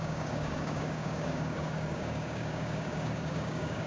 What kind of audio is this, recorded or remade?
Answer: remade